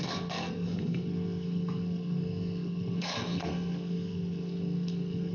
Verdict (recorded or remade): remade